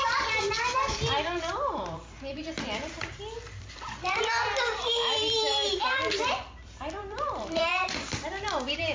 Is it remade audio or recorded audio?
remade